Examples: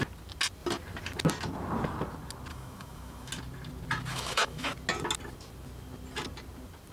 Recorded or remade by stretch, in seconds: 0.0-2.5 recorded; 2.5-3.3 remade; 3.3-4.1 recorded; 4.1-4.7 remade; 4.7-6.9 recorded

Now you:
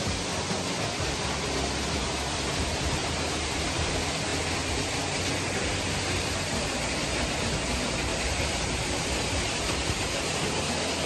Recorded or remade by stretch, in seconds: 0.0-3.0 recorded; 3.0-3.9 remade; 3.9-8.1 recorded; 8.1-10.7 remade; 10.7-11.1 recorded

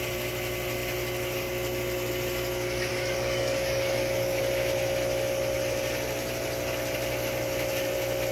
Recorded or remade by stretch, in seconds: 0.0-2.9 recorded; 2.9-4.4 remade; 4.4-8.3 recorded

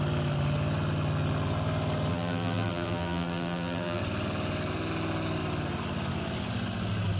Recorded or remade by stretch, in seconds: 0.0-2.1 recorded; 2.1-4.0 remade; 4.0-7.2 recorded

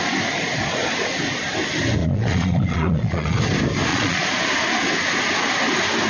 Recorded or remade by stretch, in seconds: 0.0-2.0 recorded; 2.0-3.4 remade; 3.4-3.9 recorded; 3.9-4.4 remade; 4.4-6.1 recorded

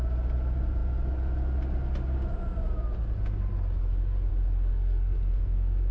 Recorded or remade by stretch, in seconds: 0.0-4.7 recorded; 4.7-5.9 remade

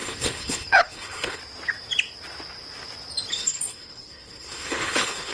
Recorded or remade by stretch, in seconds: 0.0-1.4 remade; 1.4-3.3 recorded; 3.3-5.3 remade

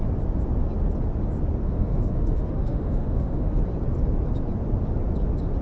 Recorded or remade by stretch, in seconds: 0.0-1.6 recorded; 1.6-3.6 remade; 3.6-5.6 recorded